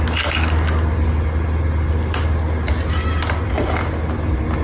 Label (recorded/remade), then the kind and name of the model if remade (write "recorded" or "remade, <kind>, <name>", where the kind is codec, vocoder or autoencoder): recorded